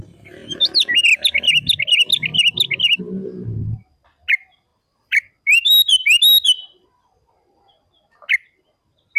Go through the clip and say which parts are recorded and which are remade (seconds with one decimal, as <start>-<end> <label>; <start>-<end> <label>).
0.0-4.7 recorded; 4.7-5.3 remade; 5.3-9.2 recorded

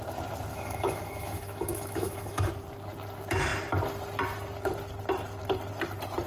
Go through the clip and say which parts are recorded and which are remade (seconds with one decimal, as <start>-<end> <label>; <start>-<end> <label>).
0.0-0.5 recorded; 0.5-2.5 remade; 2.5-6.3 recorded

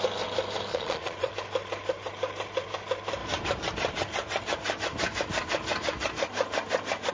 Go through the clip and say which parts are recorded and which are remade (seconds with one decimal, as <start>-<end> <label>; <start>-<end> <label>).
0.0-0.7 recorded; 0.7-1.3 remade; 1.3-7.1 recorded

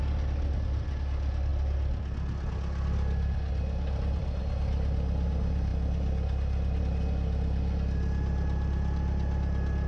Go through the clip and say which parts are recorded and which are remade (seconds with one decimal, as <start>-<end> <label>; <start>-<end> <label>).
0.0-9.9 recorded

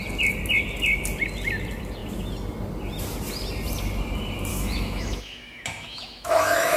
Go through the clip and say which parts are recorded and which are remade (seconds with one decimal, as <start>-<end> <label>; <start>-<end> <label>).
0.0-4.5 recorded; 4.5-6.8 remade

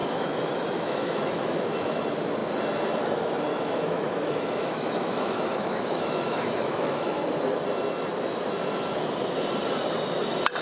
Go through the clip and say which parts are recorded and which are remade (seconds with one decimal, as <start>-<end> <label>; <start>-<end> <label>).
0.0-2.0 remade; 2.0-3.5 recorded; 3.5-7.2 remade; 7.2-10.6 recorded